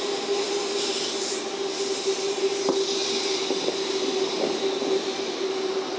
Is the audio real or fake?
real